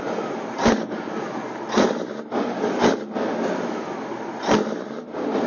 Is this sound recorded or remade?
recorded